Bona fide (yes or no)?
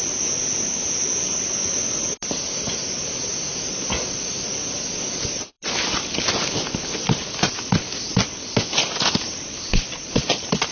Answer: yes